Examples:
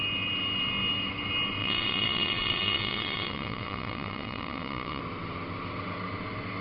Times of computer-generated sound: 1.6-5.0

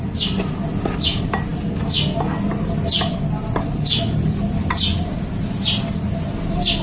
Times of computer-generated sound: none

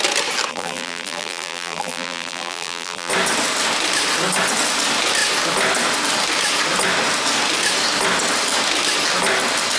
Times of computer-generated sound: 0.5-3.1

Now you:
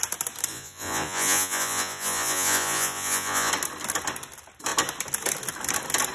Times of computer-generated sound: 0.5-3.5

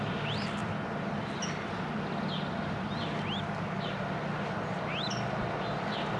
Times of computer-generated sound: none

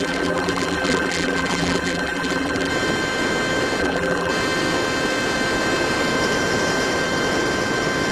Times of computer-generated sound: 0.0-2.7; 3.8-4.3